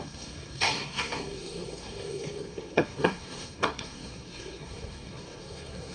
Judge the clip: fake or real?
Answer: fake